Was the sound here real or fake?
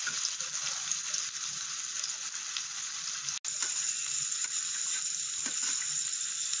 real